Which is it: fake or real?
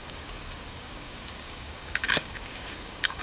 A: fake